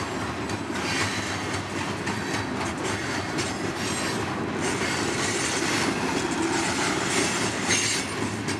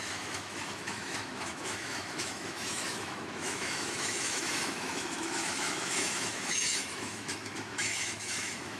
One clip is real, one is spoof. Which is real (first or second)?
first